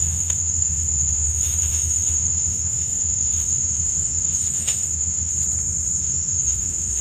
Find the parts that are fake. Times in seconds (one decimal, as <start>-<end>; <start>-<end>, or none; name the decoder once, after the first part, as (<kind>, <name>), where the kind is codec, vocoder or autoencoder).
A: 0.0-5.3 (autoencoder, DAC-VAE); 6.0-7.0